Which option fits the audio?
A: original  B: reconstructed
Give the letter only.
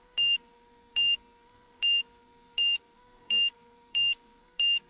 B